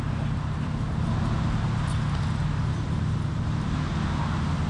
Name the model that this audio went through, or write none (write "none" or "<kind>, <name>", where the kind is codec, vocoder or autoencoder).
none